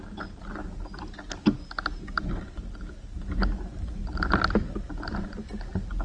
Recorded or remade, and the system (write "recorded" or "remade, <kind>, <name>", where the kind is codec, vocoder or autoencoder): recorded